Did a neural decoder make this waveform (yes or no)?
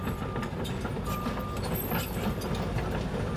no